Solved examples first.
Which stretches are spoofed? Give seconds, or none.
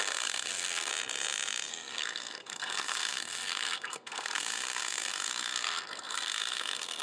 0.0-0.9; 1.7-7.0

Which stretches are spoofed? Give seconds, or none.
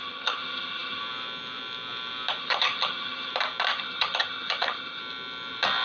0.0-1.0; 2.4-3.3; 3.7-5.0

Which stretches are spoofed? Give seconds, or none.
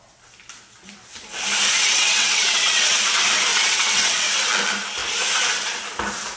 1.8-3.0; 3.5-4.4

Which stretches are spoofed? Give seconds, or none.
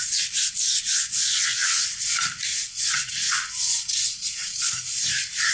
0.7-1.8; 2.5-4.7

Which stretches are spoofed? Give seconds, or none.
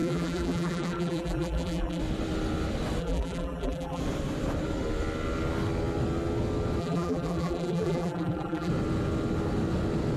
0.0-2.0; 3.0-4.0; 6.8-8.7